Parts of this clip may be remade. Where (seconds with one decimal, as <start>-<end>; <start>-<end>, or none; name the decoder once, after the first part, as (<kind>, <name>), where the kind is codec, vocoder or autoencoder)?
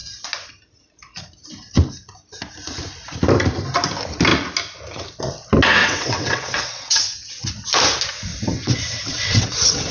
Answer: 5.8-7.5 (vocoder, WaveNeXt); 8.3-9.9